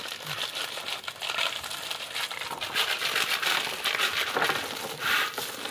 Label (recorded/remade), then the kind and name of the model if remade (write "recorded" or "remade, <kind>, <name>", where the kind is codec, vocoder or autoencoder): remade, vocoder, BigVGAN v2